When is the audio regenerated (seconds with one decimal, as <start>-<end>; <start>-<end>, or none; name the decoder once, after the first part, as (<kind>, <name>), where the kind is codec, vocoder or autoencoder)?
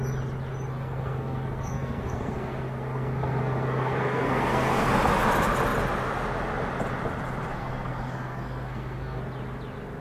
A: 0.7-4.9 (codec, SNAC); 7.5-9.2